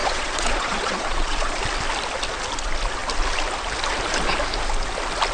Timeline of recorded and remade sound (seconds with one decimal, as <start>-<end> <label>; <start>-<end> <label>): 0.0-1.6 remade; 1.6-5.3 recorded